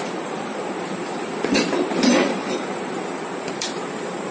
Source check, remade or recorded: remade